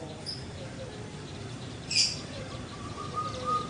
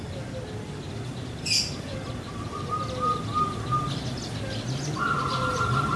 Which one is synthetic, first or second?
first